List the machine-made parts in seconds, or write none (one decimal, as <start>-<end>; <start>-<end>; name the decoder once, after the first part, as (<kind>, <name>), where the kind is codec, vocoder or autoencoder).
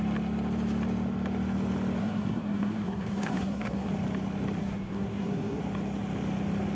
2.0-3.9 (codec, SNAC); 4.6-5.6